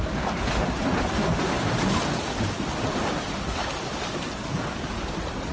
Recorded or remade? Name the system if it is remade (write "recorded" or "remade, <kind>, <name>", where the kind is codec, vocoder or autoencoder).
recorded